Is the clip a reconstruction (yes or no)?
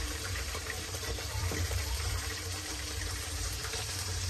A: yes